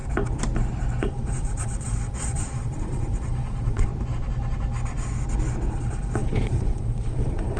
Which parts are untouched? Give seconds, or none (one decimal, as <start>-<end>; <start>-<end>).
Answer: 0.0-1.0; 3.9-5.7